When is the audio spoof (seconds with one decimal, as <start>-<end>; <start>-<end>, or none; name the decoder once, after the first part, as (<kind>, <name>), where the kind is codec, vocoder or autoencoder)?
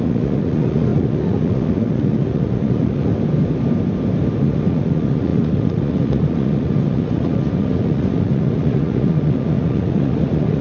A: 0.0-3.1 (vocoder, Vocos); 4.4-10.6